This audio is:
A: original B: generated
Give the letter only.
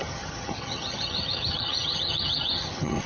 B